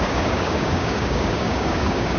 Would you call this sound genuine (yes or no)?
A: no